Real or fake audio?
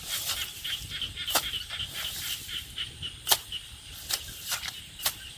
real